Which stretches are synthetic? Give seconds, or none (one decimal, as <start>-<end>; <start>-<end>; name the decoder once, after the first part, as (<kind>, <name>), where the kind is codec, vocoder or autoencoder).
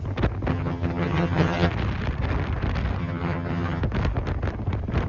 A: 0.5-1.7 (vocoder, HiFi-GAN); 3.0-3.8